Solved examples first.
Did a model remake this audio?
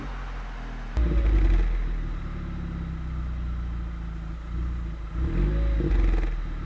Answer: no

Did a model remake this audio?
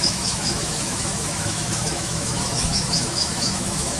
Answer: yes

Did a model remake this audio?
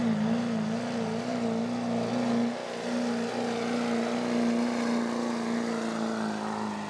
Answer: no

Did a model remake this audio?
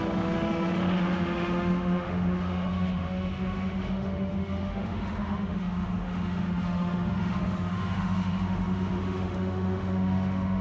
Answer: yes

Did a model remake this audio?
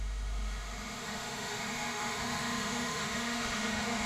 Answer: yes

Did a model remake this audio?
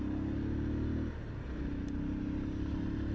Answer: no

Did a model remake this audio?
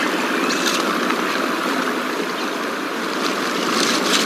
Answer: no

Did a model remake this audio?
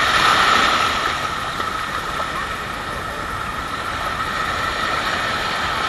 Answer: no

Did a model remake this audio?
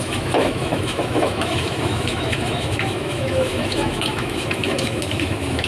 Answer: yes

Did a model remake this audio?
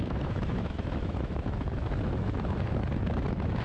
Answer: yes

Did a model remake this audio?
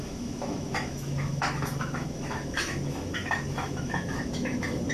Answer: yes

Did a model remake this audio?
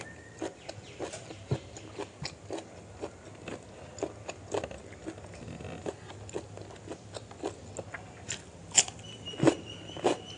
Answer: no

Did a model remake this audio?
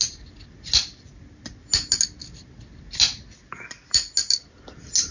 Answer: no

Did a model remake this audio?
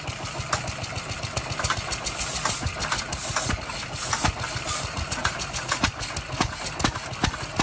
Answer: no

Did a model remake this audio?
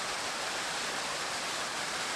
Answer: no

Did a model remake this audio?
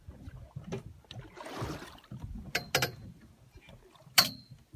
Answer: no